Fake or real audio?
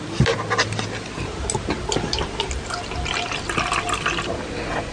real